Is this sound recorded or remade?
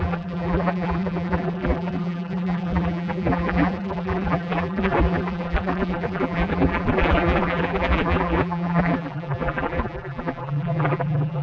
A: remade